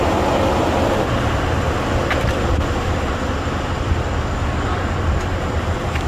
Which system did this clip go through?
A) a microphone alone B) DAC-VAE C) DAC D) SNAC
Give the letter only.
A